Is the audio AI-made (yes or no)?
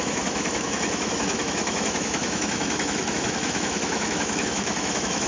yes